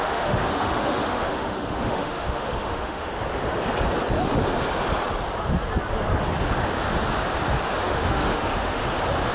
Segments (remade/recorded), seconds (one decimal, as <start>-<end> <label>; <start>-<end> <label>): 0.0-3.1 remade; 3.1-7.9 recorded; 7.9-8.8 remade; 8.8-9.3 recorded